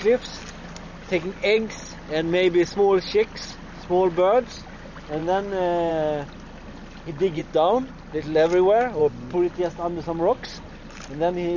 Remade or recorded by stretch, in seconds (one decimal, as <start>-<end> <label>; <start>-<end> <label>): 0.0-11.6 recorded